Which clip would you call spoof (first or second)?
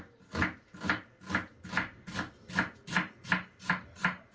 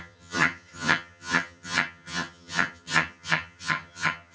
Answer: second